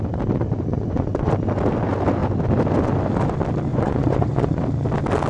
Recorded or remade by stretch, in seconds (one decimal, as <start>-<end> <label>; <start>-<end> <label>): 0.0-0.7 recorded; 0.7-1.3 remade; 1.3-3.7 recorded; 3.7-4.6 remade; 4.6-5.3 recorded